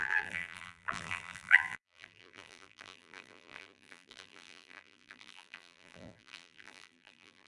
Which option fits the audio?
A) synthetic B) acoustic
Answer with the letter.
A